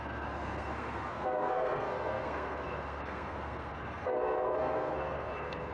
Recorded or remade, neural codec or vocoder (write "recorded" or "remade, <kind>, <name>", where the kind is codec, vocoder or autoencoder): remade, codec, SNAC